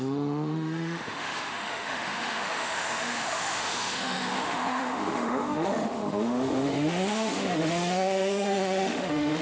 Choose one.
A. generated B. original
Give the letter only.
A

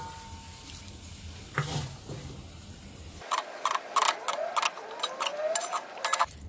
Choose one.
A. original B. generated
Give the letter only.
A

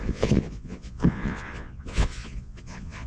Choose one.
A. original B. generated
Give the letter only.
B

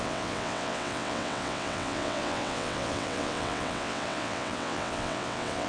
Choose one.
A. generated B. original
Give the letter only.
A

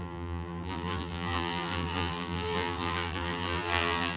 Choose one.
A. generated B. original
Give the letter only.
A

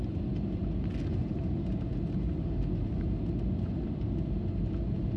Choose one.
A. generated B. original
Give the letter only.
B